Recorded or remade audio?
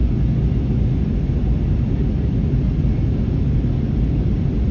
recorded